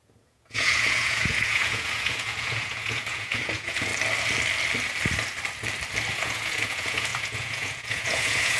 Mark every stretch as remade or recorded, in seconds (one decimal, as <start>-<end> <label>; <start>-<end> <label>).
0.0-3.9 remade; 3.9-6.1 recorded; 6.1-8.6 remade